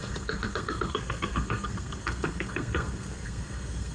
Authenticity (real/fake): fake